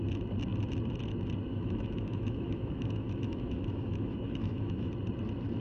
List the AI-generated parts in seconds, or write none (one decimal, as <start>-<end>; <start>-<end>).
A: 1.5-4.9